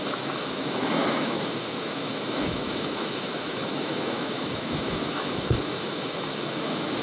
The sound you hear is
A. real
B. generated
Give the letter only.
B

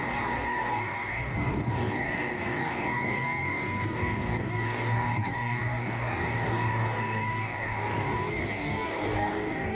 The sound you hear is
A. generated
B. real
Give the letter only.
A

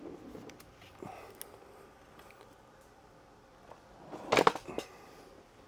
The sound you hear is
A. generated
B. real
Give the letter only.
B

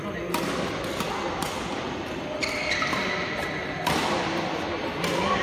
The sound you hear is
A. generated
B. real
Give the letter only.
B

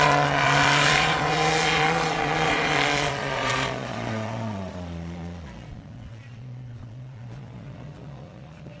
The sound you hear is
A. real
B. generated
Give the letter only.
B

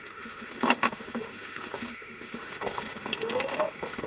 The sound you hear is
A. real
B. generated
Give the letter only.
B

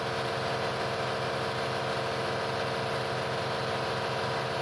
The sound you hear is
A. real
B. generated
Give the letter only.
A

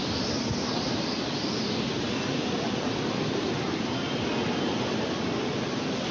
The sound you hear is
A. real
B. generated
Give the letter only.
B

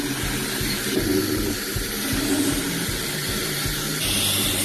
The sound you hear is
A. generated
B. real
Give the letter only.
A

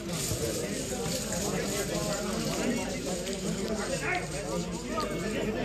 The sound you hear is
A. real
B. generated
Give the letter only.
A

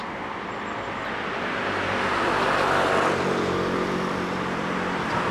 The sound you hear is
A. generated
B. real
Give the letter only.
A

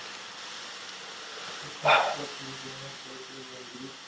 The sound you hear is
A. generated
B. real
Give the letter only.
B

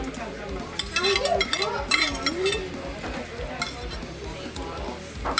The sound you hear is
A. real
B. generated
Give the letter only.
A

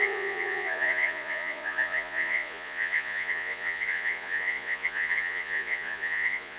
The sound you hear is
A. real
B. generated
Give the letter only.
B